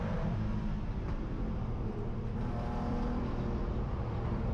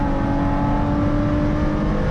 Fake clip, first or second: first